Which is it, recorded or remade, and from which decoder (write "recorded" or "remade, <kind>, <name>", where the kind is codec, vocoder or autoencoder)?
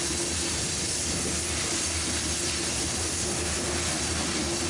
recorded